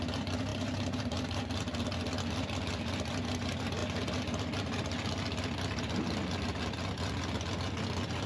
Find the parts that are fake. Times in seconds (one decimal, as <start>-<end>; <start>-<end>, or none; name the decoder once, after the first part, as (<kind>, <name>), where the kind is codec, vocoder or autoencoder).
0.5-1.4 (vocoder, BigVGAN v2)